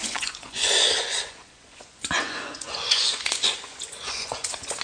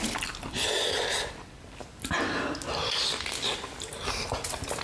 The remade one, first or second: first